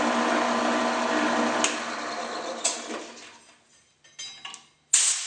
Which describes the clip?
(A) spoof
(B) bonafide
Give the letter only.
B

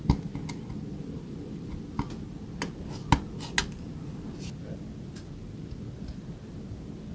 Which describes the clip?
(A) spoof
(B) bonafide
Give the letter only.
B